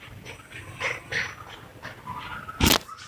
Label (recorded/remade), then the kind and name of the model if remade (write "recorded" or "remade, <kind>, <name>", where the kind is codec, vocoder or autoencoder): recorded